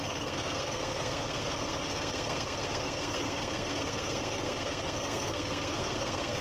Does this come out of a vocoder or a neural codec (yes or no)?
yes